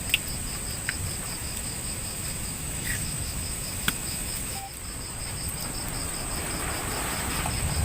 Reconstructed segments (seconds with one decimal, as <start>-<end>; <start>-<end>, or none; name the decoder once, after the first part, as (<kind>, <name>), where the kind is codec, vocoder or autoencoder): 1.4-4.7 (autoencoder, DAC-VAE)